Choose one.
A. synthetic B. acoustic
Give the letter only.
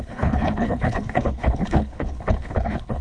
A